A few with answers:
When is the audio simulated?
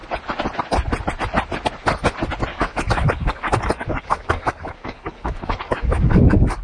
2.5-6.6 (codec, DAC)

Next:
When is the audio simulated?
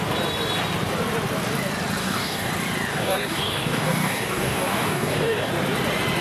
2.0-2.5 (codec, DAC); 2.9-5.5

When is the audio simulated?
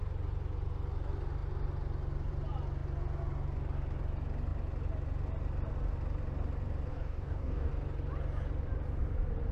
6.9-7.7 (codec, DAC)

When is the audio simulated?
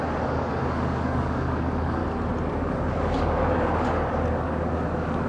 0.0-2.0 (codec, DAC); 2.5-5.3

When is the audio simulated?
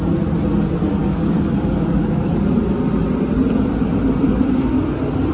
1.0-2.3 (codec, DAC)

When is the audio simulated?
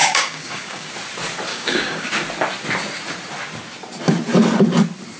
0.0-0.9 (codec, DAC); 1.5-2.1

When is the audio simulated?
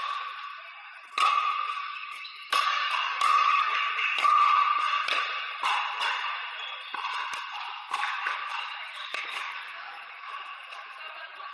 1.8-3.8 (codec, DAC); 9.1-10.1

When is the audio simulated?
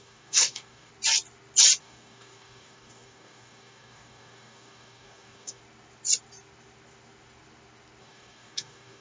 0.0-0.9 (codec, DAC); 1.8-5.6; 8.0-9.0